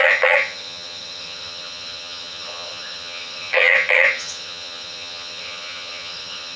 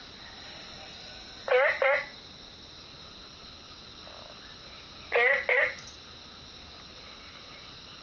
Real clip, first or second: second